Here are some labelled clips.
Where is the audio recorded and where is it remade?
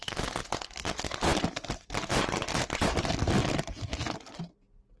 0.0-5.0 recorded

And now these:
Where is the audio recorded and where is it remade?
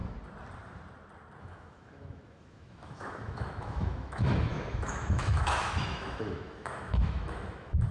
0.0-1.4 recorded; 1.4-7.9 remade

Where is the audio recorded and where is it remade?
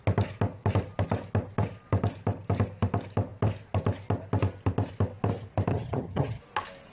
0.0-5.7 recorded; 5.7-6.4 remade; 6.4-6.9 recorded